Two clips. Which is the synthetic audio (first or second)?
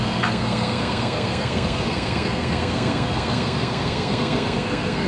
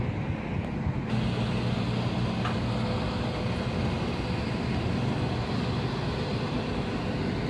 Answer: first